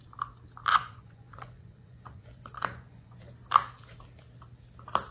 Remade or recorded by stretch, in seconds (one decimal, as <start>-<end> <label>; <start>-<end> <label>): 0.0-0.7 recorded; 0.7-3.2 remade; 3.2-5.1 recorded